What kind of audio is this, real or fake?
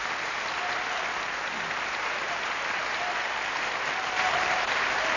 real